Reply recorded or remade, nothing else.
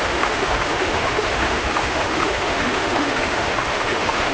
remade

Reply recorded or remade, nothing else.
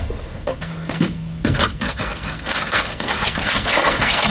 remade